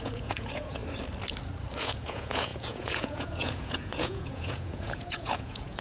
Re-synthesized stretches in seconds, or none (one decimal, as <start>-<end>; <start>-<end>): 0.0-0.8; 1.8-5.8